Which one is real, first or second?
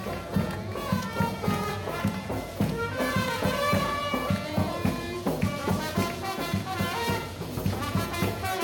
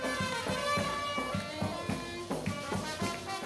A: second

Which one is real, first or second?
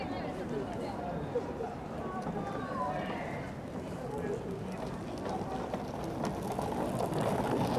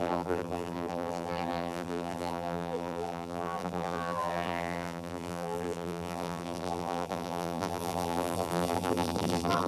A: first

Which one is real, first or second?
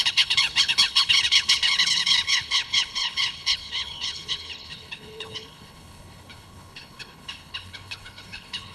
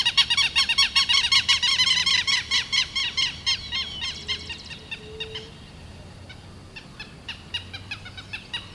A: second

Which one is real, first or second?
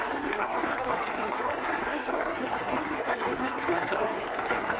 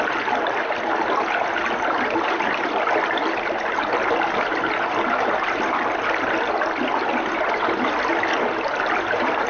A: second